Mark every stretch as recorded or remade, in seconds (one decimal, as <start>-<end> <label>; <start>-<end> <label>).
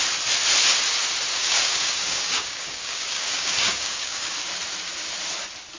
0.0-1.3 recorded; 1.3-4.5 remade; 4.5-5.8 recorded